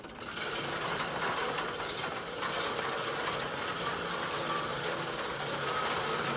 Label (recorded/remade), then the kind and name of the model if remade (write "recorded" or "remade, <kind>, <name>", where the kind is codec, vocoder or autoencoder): recorded